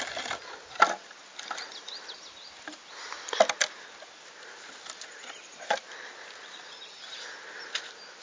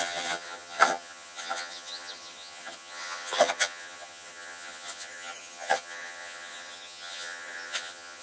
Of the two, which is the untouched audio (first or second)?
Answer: first